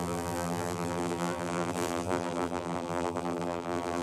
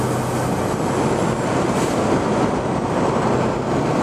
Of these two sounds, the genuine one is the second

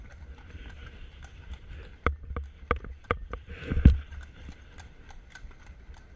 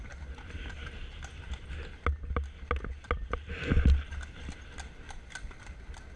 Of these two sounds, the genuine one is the second